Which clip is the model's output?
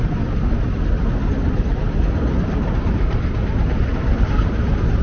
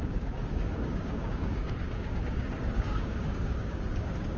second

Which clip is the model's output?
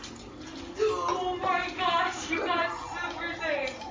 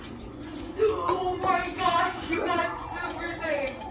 second